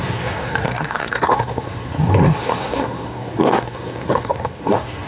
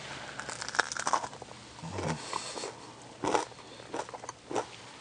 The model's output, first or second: first